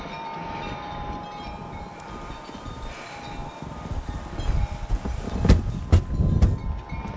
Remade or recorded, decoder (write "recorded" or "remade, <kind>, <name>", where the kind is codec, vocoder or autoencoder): recorded